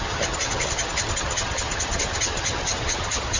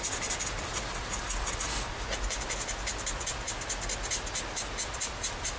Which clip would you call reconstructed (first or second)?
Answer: first